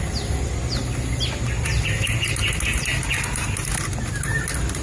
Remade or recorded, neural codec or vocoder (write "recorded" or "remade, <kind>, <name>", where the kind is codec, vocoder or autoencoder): recorded